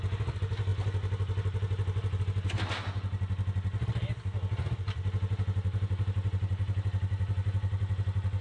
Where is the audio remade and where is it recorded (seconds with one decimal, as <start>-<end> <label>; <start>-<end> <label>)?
0.0-8.4 recorded